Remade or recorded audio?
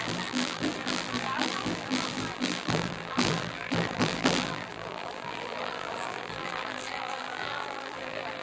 remade